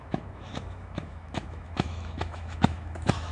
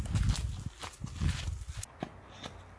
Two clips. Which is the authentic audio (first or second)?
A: second